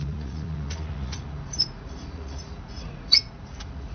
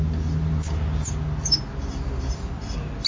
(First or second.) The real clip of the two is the second